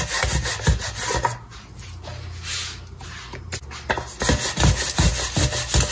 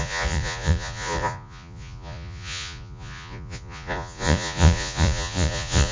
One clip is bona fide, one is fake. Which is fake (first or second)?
second